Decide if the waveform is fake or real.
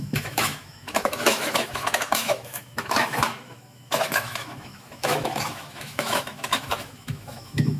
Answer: fake